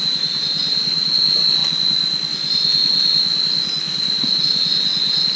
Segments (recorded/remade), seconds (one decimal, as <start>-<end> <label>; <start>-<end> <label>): 0.0-5.4 recorded